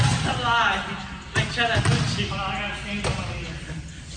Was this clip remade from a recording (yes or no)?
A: no